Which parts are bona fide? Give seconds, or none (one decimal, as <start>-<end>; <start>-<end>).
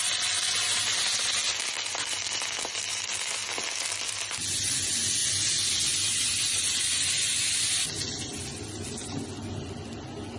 0.0-10.4